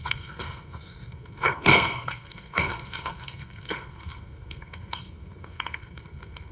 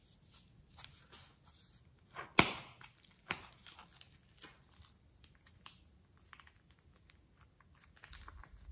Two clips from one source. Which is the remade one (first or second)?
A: first